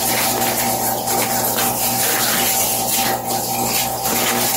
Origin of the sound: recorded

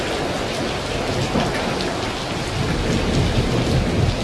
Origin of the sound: recorded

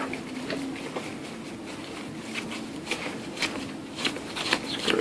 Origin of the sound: recorded